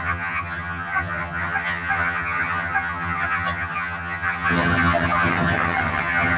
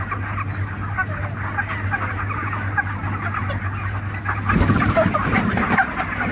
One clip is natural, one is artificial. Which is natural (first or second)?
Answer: second